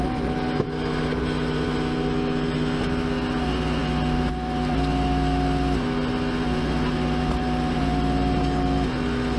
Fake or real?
real